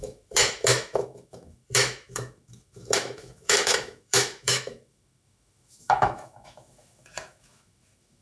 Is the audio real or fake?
fake